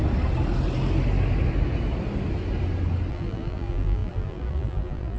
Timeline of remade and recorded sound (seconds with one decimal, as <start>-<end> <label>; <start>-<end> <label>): 0.0-3.1 recorded; 3.1-5.2 remade